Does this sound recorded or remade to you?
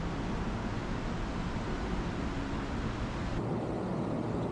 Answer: recorded